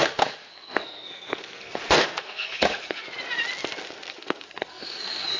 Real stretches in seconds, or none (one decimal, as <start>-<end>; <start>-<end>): 3.0-4.1